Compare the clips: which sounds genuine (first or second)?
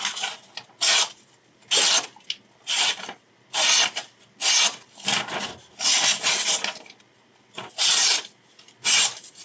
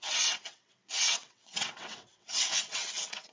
first